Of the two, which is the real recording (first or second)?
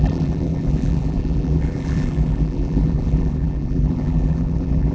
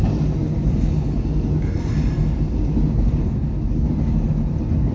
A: second